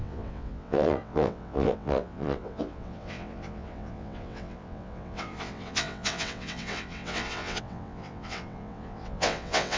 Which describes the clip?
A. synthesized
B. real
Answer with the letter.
A